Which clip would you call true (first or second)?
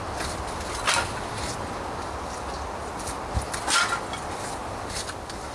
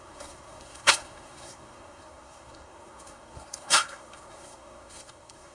first